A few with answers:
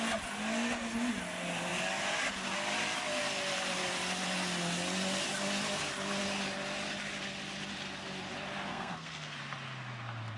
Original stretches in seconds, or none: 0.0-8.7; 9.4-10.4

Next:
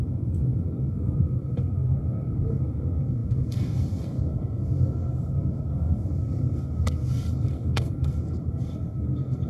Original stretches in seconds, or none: none

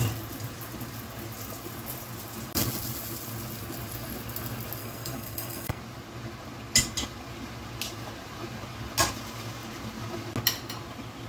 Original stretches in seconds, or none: 0.0-4.8; 5.8-11.3